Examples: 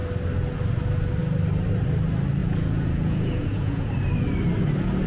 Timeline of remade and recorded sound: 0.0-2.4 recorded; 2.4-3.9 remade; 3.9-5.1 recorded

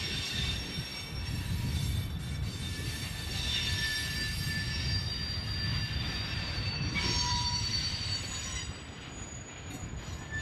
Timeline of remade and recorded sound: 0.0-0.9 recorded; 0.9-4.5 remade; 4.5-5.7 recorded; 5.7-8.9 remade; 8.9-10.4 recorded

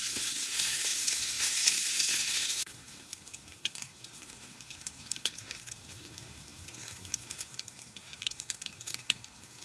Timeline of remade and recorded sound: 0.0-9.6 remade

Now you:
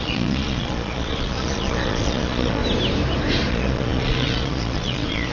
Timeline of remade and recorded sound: 0.0-2.6 remade; 2.6-3.5 recorded; 3.5-5.3 remade